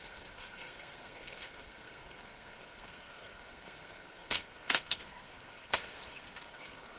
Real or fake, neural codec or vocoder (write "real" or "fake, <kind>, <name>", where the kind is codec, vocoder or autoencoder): fake, codec, SNAC